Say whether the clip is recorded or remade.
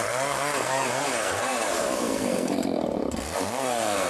remade